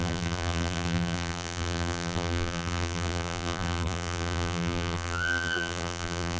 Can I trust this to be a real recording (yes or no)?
no